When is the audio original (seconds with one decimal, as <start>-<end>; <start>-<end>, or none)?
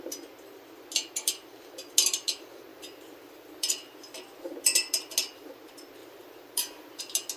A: 0.0-2.7; 3.7-6.0; 7.0-7.4